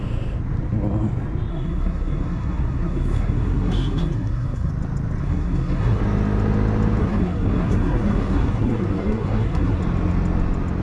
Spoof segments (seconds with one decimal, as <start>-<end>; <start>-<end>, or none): 1.5-4.7; 5.2-6.0; 7.0-9.8

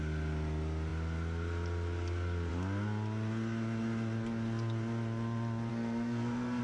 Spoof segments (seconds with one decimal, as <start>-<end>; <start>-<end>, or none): 5.7-6.6

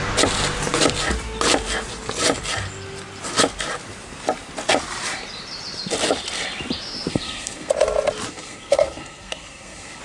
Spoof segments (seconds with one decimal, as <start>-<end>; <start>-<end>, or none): 7.1-7.7; 8.3-10.0

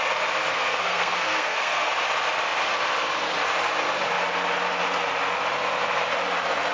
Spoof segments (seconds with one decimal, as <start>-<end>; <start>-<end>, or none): 0.5-1.9

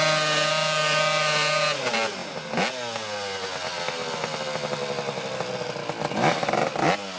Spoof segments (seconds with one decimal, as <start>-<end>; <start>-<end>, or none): none

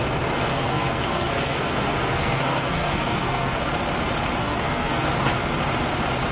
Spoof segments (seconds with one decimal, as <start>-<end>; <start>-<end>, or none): 0.5-3.6; 4.4-5.1